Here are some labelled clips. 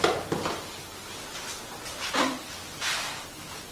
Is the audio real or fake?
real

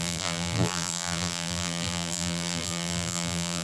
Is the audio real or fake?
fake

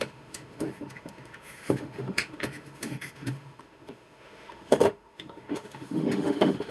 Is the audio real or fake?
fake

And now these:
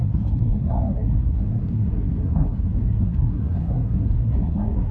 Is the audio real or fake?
fake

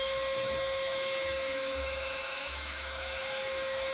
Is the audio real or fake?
fake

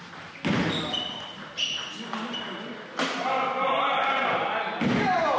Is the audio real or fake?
real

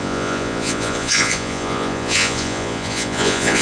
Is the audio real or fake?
fake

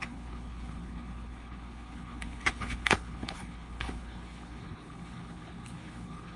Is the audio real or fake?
fake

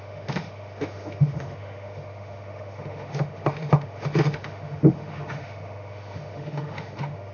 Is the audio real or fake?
fake